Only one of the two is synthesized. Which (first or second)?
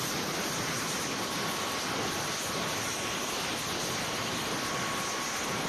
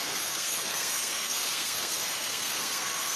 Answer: second